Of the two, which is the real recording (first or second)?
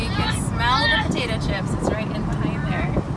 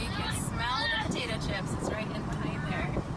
first